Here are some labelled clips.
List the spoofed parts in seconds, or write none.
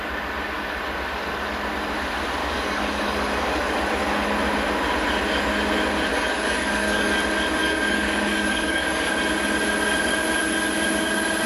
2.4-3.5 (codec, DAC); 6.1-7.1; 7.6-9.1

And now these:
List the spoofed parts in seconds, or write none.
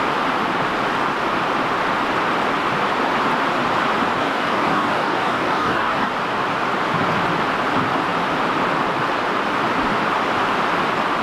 4.2-6.1 (codec, DAC)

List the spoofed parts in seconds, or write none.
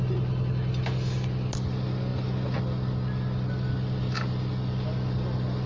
none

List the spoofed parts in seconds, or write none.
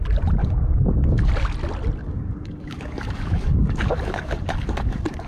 0.4-1.3 (codec, DAC); 2.0-5.3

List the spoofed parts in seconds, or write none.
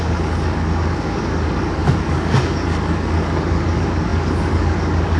0.0-5.2 (codec, DAC)